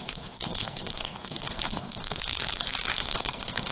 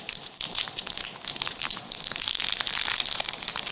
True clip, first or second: second